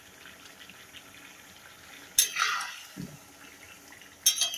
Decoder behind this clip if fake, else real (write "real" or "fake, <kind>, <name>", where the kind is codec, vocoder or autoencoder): real